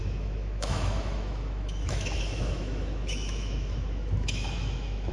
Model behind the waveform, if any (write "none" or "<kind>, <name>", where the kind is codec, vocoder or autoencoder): autoencoder, DAC-VAE